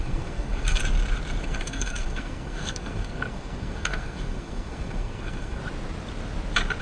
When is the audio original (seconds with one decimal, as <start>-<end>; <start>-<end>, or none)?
0.8-1.4; 5.6-6.8